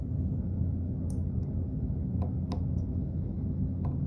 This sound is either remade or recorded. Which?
remade